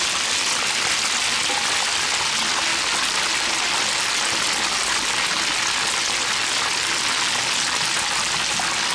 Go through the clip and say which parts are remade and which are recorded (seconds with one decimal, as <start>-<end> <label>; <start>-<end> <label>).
0.0-8.9 recorded

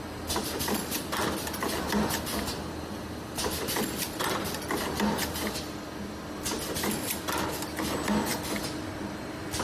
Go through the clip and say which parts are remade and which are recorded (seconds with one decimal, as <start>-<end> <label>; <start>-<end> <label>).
0.0-9.6 recorded

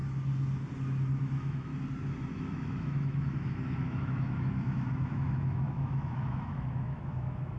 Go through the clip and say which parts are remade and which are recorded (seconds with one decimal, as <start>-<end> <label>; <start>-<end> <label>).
0.0-1.2 recorded; 1.2-1.7 remade; 1.7-2.3 recorded; 2.3-7.6 remade

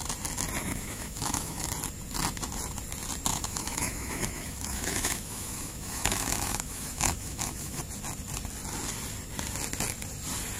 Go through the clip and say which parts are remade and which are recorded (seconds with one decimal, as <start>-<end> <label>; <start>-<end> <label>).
0.0-0.6 recorded; 0.6-1.7 remade; 1.7-3.3 recorded; 3.3-7.8 remade; 7.8-10.6 recorded